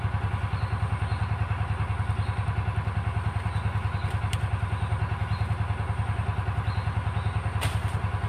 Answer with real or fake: real